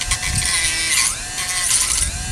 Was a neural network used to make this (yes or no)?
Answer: no